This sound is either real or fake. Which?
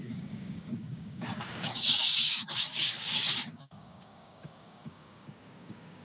fake